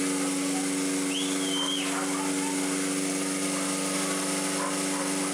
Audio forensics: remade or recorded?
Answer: recorded